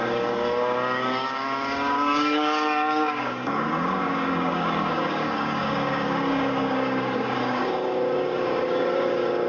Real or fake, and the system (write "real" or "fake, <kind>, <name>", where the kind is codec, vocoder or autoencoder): fake, codec, DAC